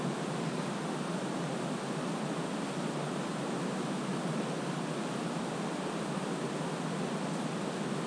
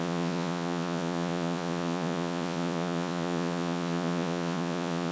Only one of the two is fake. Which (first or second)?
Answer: second